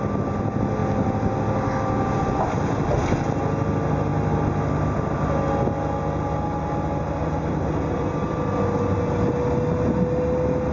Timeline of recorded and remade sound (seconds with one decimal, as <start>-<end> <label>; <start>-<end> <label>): 0.0-10.7 recorded